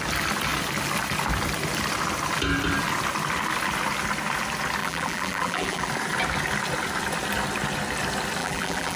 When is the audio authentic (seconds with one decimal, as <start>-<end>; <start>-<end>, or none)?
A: 0.0-4.8; 5.9-8.4